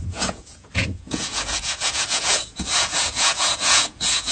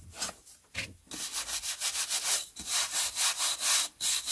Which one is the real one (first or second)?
second